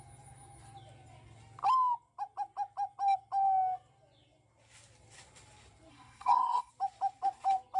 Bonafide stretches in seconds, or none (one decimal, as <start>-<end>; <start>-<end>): 0.0-5.9; 6.7-7.8